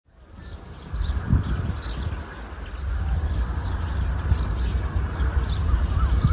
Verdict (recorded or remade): recorded